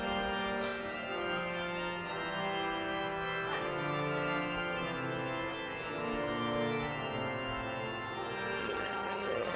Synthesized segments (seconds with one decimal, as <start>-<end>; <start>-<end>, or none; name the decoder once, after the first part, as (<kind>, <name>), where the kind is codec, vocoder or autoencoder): 8.6-9.6 (vocoder, HiFi-GAN)